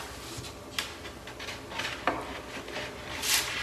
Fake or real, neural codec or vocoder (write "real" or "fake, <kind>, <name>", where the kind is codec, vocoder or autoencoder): real